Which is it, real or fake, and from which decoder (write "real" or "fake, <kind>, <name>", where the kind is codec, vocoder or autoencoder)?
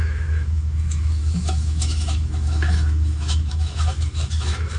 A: fake, autoencoder, DAC-VAE